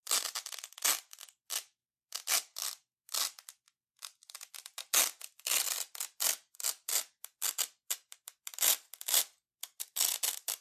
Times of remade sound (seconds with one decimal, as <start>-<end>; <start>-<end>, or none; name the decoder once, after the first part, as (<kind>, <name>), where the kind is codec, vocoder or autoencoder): none